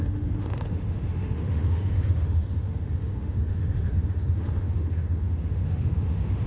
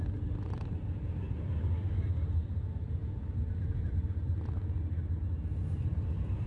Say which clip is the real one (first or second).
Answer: second